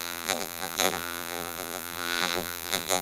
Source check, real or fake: fake